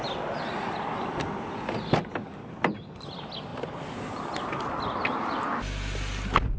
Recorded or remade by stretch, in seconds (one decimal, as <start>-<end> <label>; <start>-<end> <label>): 0.0-6.6 recorded